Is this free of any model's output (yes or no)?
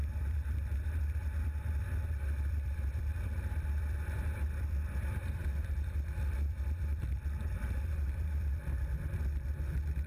no